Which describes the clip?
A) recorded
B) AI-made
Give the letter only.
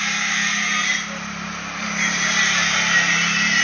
B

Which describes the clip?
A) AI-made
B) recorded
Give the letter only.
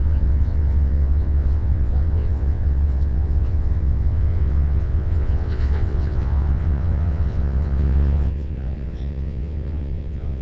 A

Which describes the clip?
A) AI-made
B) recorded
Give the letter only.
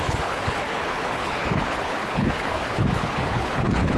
A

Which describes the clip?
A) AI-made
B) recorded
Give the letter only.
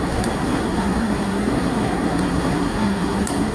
A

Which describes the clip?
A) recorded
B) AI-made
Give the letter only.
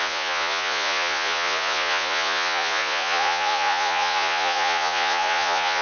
B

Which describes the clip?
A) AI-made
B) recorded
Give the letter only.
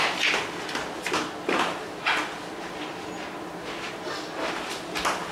B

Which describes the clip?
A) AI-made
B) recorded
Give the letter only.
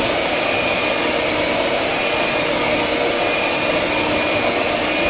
B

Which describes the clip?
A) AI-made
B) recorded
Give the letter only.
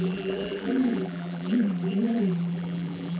A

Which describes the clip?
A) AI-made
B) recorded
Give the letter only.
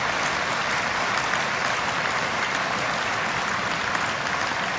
B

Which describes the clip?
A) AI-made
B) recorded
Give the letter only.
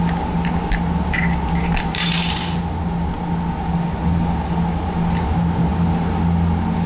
B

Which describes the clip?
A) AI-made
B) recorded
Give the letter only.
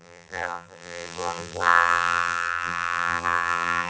A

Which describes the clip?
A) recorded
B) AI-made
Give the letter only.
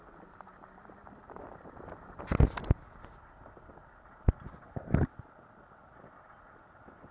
A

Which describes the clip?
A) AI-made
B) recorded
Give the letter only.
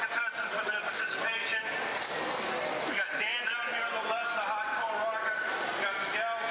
B